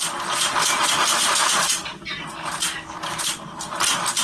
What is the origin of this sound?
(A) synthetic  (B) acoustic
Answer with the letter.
B